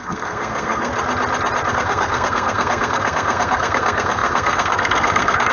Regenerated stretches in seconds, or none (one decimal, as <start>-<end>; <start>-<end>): 0.0-0.9; 1.7-5.5